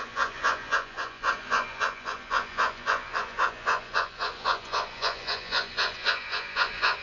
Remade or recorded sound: remade